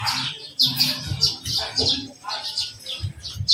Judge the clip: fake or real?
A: real